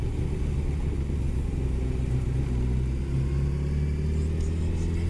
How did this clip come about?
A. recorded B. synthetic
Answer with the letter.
A